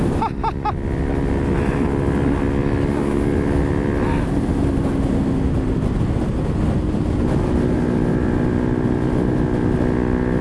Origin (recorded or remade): recorded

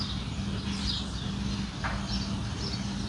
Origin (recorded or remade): recorded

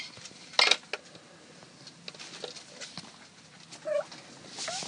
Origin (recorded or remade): recorded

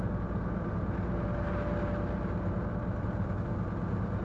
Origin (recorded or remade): recorded